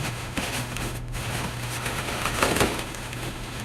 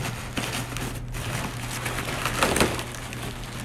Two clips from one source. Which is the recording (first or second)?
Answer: second